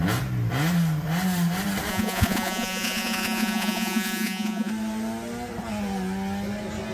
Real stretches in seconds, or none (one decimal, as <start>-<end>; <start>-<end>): 0.0-1.9; 4.7-6.9